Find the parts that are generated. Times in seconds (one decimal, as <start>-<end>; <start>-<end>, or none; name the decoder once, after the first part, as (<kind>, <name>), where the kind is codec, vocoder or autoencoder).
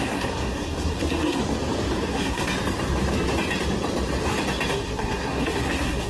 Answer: 0.0-1.4 (codec, SNAC); 2.1-2.5; 4.7-6.1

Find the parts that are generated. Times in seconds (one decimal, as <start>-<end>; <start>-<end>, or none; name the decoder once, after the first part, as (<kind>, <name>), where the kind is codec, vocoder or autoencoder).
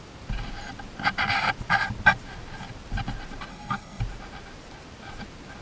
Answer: 3.5-4.0 (codec, SNAC)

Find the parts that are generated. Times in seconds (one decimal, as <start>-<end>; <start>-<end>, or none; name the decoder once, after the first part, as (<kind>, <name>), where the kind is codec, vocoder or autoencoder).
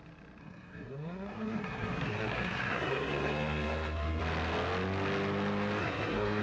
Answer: 0.4-4.2 (codec, SNAC); 5.8-6.4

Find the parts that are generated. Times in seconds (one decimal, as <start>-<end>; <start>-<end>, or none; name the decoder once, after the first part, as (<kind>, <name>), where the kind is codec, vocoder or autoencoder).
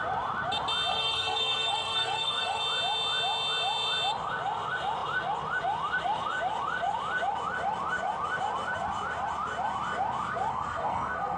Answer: 0.9-2.6 (codec, SNAC); 10.5-11.4